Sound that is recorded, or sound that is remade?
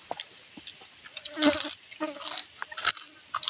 recorded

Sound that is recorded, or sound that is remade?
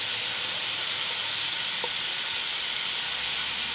recorded